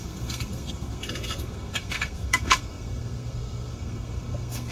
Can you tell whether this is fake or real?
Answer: fake